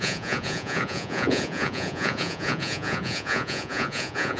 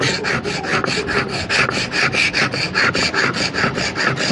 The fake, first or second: first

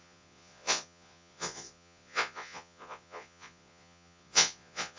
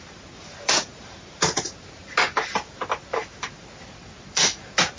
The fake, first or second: first